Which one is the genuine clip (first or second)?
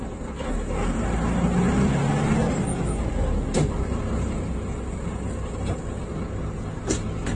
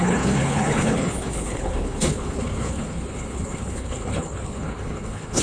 first